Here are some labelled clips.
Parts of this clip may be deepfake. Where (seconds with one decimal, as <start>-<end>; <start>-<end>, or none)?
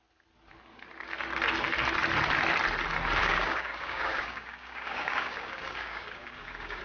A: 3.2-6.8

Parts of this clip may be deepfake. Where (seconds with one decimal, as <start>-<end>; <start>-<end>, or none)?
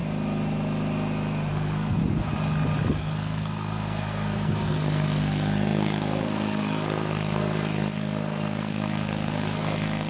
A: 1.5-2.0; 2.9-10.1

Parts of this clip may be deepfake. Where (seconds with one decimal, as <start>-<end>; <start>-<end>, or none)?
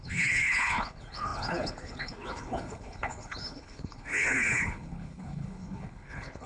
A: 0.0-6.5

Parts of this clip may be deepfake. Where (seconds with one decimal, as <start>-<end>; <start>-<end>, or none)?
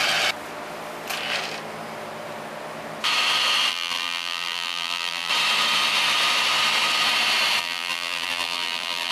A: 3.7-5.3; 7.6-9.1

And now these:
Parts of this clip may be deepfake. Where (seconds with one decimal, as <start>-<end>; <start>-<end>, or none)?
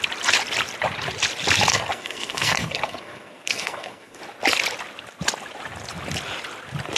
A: 1.7-4.2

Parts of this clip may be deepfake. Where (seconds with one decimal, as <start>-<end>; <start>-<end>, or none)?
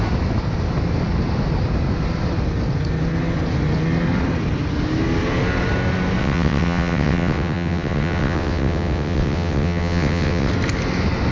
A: 6.2-10.5